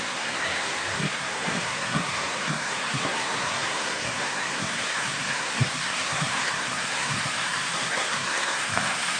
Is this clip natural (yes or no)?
no